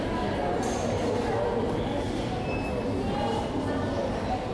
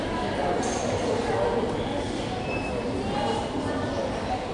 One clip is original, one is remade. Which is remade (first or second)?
second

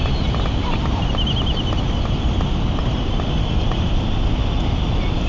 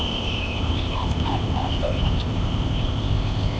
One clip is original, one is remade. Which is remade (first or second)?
second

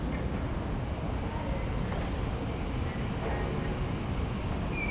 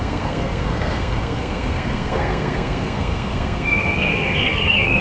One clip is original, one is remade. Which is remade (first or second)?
second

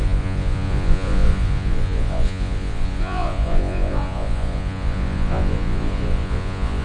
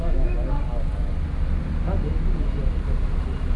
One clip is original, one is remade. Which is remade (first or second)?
first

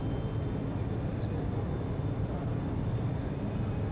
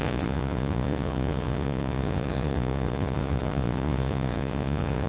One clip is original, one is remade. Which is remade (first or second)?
second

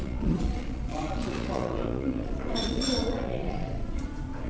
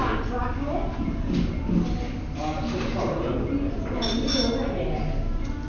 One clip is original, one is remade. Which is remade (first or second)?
first